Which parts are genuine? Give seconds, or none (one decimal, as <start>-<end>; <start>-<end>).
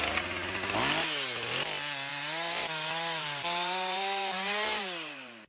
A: 0.0-2.1